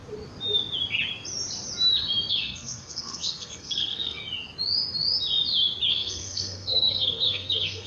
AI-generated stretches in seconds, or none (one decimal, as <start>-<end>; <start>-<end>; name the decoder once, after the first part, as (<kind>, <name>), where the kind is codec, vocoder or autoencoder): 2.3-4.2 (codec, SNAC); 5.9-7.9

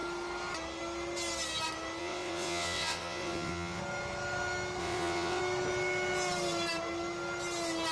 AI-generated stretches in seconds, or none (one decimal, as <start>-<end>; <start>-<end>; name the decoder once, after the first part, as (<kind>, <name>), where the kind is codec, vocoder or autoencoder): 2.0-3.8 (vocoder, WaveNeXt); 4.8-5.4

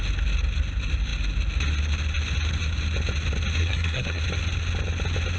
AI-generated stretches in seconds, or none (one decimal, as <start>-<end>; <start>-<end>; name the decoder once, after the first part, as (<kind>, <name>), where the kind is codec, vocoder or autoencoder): 3.6-4.2 (codec, SNAC)

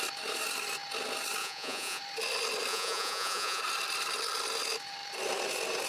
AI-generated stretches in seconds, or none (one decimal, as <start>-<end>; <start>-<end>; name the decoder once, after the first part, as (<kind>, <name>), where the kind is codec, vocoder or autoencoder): 1.4-2.0 (vocoder, Vocos); 2.7-3.6

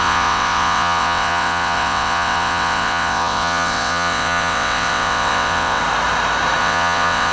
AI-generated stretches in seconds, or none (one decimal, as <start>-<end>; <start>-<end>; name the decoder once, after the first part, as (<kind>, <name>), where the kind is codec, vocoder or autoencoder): 0.0-5.8 (vocoder, WaveNeXt); 6.6-7.3

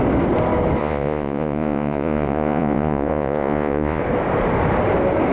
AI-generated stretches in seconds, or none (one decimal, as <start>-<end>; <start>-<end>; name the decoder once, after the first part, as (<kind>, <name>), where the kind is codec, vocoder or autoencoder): 0.8-4.0 (vocoder, Vocos)

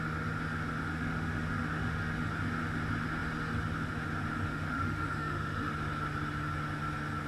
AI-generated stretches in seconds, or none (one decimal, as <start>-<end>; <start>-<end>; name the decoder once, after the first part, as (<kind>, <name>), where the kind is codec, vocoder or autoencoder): 0.9-2.3 (autoencoder, DAC-VAE); 4.5-5.7